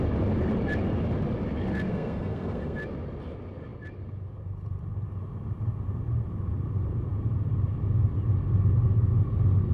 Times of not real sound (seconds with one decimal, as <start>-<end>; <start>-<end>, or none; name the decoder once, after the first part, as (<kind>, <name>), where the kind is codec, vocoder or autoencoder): 1.9-2.8 (codec, SNAC)